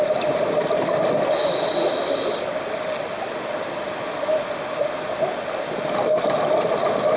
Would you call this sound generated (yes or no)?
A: no